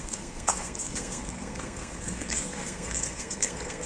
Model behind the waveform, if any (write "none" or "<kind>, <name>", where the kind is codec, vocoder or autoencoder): codec, SNAC